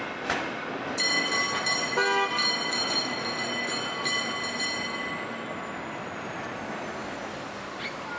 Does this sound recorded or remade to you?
recorded